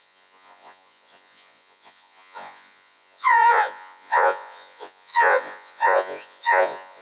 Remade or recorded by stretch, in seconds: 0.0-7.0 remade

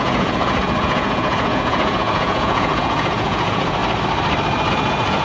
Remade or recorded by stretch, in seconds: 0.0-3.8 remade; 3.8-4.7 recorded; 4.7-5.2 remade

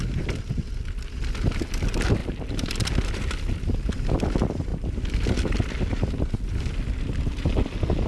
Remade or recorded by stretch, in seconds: 0.0-8.1 recorded